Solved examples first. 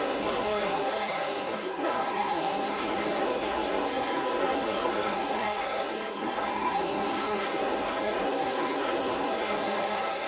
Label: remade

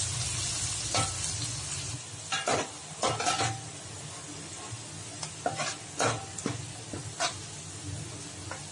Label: recorded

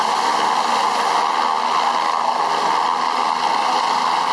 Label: recorded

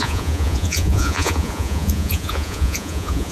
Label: remade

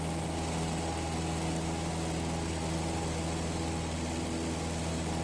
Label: recorded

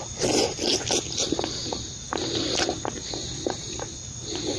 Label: recorded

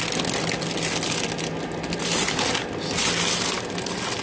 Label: recorded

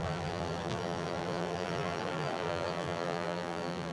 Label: remade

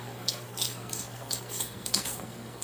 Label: remade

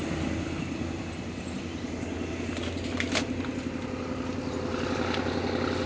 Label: recorded